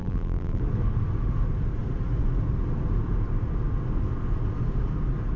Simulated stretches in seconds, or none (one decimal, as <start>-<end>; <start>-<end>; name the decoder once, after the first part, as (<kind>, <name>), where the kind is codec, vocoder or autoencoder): 0.0-0.6 (vocoder, BigVGAN v2)